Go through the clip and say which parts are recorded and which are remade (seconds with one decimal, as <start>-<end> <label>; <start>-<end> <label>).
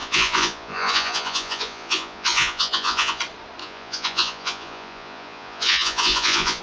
0.0-3.2 remade; 3.2-3.6 recorded; 3.6-6.6 remade